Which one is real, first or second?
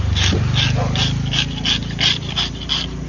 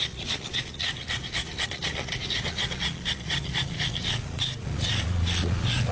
first